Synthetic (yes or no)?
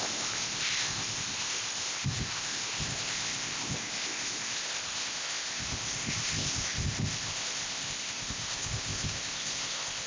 yes